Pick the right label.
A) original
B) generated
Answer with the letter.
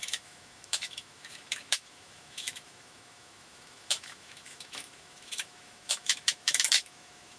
B